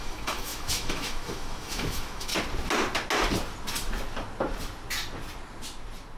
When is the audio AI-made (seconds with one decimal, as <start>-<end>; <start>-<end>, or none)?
0.0-2.3